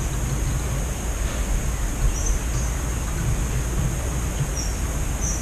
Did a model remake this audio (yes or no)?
no